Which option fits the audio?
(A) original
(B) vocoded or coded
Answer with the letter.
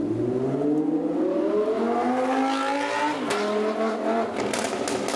A